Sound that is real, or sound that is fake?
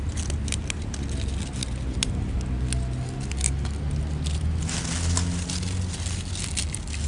real